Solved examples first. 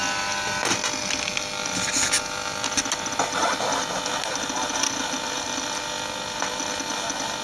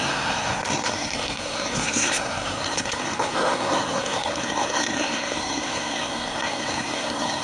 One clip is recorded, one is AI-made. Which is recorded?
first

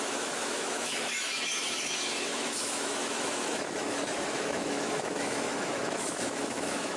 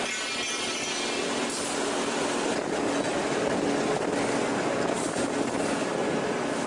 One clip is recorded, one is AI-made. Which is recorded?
second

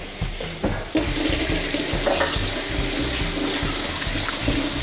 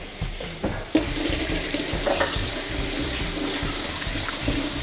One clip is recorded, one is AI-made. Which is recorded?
first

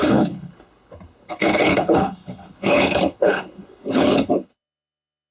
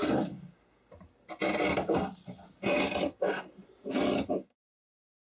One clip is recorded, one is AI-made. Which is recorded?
second